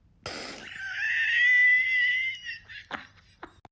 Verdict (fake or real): real